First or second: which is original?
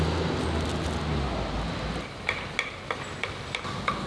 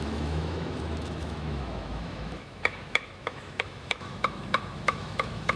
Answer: first